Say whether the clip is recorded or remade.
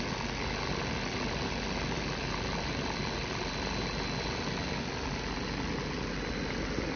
recorded